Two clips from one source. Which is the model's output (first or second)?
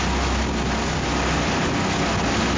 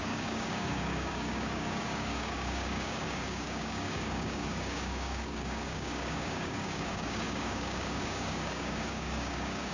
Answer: second